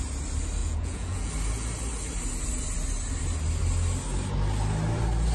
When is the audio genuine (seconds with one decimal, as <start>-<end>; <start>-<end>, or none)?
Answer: 0.0-0.6; 1.3-5.3